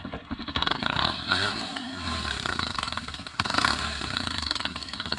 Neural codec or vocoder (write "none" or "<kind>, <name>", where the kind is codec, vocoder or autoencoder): codec, SNAC